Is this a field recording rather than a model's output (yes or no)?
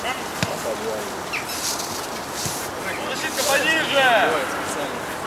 yes